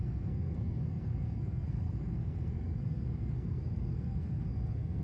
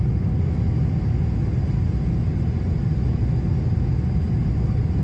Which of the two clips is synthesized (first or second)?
first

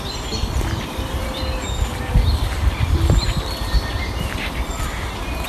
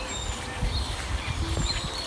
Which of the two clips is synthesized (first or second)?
first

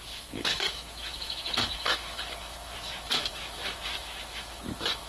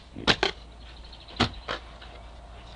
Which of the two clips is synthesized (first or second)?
first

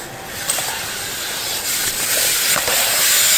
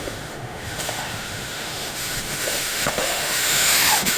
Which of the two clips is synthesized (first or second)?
second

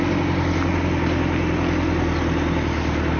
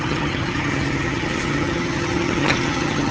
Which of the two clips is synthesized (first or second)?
second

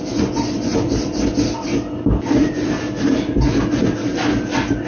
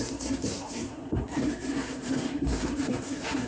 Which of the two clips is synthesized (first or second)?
second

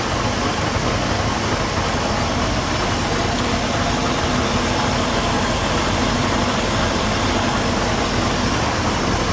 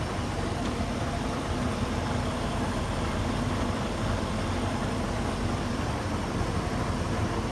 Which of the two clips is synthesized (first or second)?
second